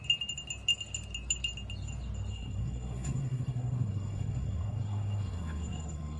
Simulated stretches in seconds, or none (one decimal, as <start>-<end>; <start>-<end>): 2.3-6.2